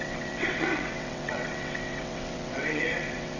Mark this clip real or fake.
fake